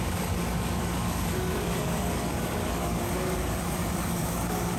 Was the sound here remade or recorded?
remade